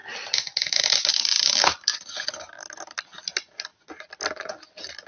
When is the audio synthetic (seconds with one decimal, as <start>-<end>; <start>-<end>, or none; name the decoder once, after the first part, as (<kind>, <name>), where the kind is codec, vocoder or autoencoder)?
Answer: none